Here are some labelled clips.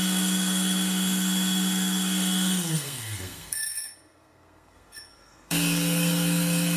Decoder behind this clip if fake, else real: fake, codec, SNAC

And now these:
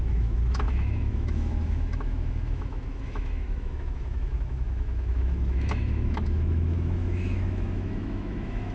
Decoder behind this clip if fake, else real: fake, autoencoder, DAC-VAE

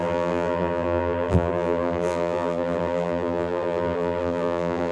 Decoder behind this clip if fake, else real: fake, vocoder, BigVGAN v2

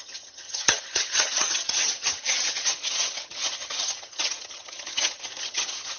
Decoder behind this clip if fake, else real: fake, vocoder, HiFi-GAN